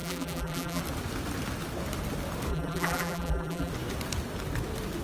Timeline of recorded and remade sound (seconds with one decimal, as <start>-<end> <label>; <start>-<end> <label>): 0.0-0.8 remade; 0.8-2.5 recorded; 2.5-3.7 remade; 3.7-5.0 recorded